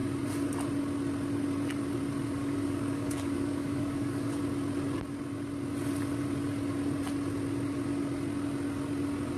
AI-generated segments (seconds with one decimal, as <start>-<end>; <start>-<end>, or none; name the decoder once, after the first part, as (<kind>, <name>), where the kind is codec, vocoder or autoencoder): 2.4-4.4 (codec, DAC)